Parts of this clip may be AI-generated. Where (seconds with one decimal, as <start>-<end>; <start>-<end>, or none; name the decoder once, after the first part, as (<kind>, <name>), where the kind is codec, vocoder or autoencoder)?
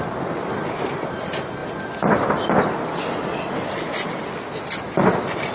0.0-1.6 (vocoder, BigVGAN v2); 4.9-5.5